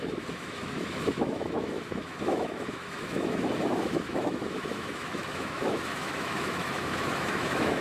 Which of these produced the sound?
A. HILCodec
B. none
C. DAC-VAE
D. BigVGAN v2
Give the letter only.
C